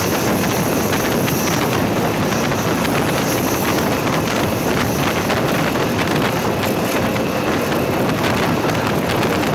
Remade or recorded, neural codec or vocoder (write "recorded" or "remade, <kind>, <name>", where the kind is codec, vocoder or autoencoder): recorded